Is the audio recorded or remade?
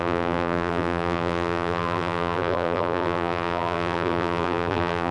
remade